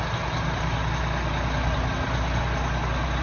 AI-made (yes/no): no